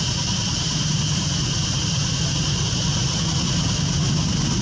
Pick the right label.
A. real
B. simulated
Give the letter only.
A